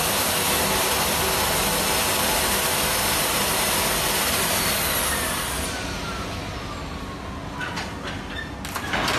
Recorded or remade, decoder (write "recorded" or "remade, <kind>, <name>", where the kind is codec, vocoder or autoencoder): recorded